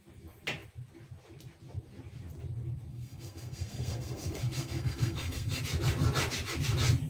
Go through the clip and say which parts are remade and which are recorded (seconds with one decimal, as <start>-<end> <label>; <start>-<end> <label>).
0.0-2.9 recorded; 2.9-5.6 remade; 5.6-7.1 recorded

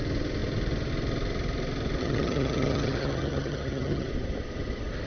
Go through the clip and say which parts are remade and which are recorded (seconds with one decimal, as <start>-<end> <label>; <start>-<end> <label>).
0.0-2.0 recorded; 2.0-4.1 remade; 4.1-5.1 recorded

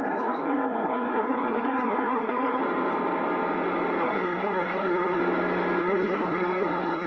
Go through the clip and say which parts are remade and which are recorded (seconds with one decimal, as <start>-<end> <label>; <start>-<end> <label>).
0.0-2.6 remade; 2.6-4.0 recorded; 4.0-5.2 remade; 5.2-5.8 recorded; 5.8-7.1 remade

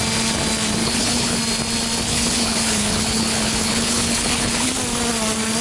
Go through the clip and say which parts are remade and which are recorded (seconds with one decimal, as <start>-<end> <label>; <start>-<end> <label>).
0.0-0.8 recorded; 0.8-1.4 remade; 1.4-2.1 recorded; 2.1-4.7 remade; 4.7-5.6 recorded

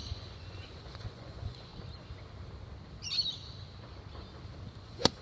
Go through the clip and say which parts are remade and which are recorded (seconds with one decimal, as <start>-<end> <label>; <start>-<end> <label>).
0.0-1.7 remade; 1.7-4.8 recorded; 4.8-5.2 remade